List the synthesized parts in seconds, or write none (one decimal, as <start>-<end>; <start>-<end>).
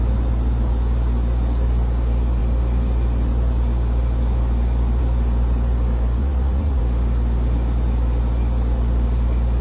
6.2-6.8